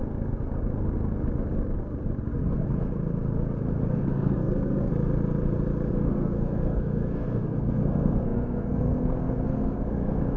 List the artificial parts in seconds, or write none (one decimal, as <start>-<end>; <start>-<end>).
3.9-4.9; 5.9-10.4